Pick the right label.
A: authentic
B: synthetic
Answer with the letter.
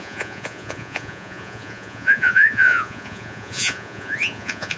B